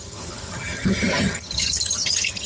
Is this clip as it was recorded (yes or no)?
no